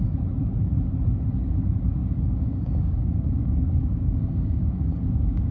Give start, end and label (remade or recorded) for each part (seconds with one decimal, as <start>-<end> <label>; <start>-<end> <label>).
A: 0.0-2.0 recorded; 2.0-5.5 remade